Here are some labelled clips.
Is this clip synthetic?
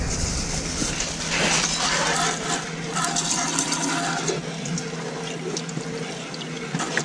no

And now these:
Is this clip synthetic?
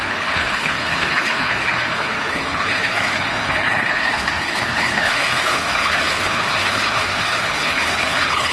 yes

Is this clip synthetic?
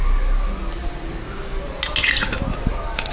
no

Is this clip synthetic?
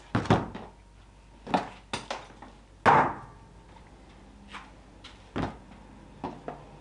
no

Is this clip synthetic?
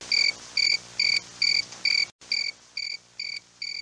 no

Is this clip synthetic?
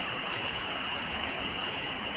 yes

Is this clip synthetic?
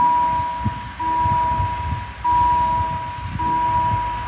no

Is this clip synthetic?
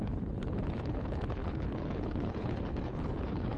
yes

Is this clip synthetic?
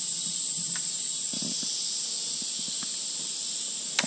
no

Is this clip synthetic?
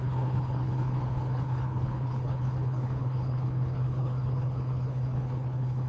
yes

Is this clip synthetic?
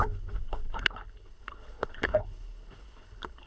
yes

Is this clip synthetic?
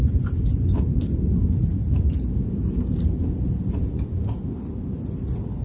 no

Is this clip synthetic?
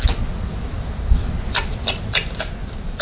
no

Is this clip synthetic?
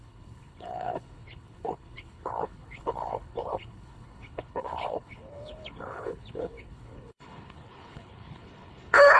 yes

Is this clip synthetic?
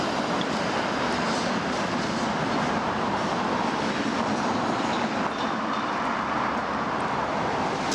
no